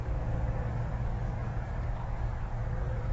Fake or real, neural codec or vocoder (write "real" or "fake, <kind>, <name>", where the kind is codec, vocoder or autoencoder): fake, codec, DAC